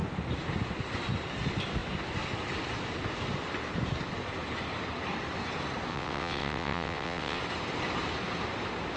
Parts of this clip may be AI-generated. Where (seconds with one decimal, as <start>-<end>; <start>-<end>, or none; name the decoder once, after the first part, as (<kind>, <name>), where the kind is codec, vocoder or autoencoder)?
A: 5.9-7.4 (vocoder, WaveNeXt)